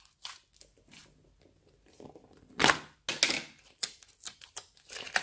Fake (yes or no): no